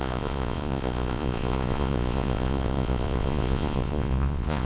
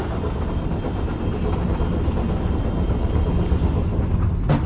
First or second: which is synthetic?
first